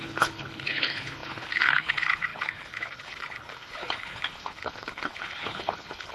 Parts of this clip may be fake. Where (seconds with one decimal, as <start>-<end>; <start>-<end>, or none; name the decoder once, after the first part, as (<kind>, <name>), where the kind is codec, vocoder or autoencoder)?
0.0-6.1 (codec, HILCodec)